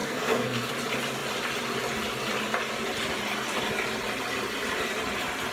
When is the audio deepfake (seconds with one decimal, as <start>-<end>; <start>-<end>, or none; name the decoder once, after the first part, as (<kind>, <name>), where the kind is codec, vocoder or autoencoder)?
0.0-0.7 (codec, SNAC)